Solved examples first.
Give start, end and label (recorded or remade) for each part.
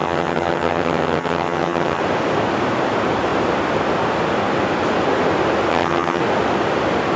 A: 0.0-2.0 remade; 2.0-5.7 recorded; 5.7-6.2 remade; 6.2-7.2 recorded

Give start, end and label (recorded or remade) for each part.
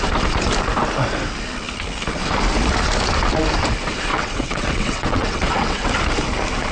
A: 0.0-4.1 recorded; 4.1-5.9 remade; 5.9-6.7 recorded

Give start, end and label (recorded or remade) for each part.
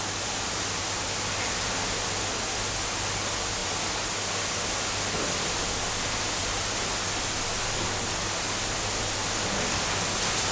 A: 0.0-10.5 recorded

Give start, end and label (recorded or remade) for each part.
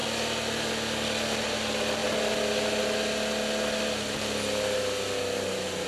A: 0.0-5.9 recorded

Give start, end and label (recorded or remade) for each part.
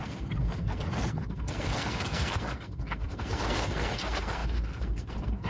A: 0.0-5.5 remade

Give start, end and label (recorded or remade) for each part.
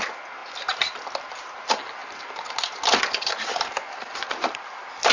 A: 0.0-5.1 recorded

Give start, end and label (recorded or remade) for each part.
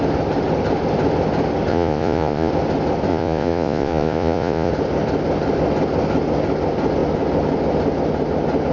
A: 0.0-1.7 recorded; 1.7-2.5 remade; 2.5-3.1 recorded; 3.1-4.7 remade; 4.7-8.7 recorded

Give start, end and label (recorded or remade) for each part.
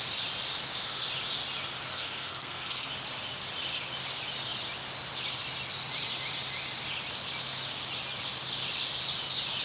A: 0.0-1.9 recorded; 1.9-2.9 remade; 2.9-9.6 recorded